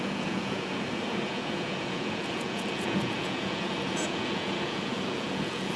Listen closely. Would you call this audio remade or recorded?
remade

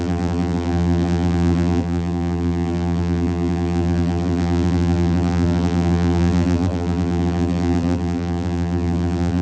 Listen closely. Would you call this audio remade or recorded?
remade